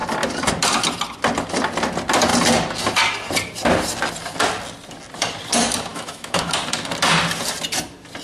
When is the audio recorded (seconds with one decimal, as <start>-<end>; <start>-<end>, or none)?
0.0-5.9; 6.5-8.2